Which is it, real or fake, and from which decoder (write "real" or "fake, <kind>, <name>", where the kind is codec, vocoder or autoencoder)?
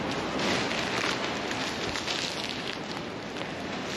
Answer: real